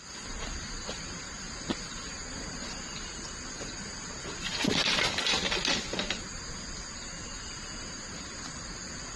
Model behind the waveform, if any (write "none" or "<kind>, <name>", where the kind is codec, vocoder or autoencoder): none